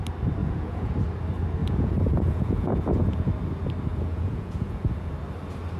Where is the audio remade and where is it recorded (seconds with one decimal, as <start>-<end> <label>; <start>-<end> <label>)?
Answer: 0.0-0.4 recorded; 0.4-1.0 remade; 1.0-1.6 recorded; 1.6-3.3 remade; 3.3-3.9 recorded; 3.9-5.1 remade; 5.1-5.8 recorded